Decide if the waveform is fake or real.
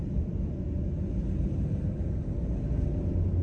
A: real